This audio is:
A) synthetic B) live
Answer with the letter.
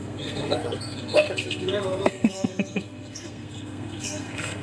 A